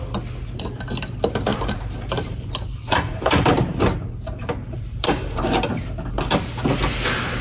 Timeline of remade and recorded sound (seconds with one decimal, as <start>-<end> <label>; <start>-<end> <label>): 0.0-1.5 recorded; 1.5-5.9 remade; 5.9-7.4 recorded